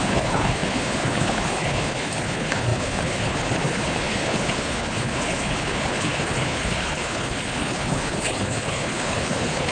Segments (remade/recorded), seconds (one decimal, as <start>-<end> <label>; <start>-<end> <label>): 0.0-9.7 remade